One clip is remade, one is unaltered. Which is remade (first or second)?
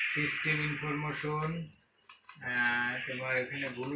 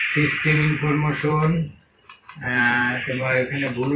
second